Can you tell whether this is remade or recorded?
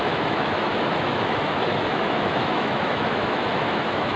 remade